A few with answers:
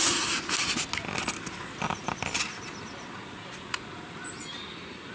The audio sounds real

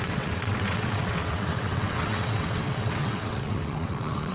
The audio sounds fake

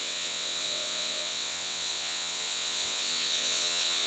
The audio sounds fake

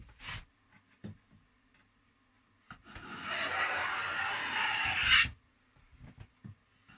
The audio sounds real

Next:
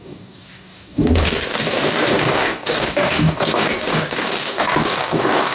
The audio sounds fake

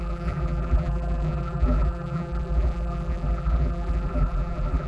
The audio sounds fake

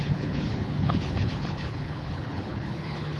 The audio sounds fake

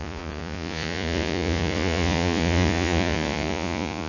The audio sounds fake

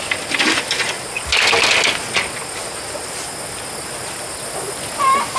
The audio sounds real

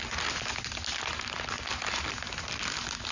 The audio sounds real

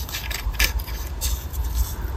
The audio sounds real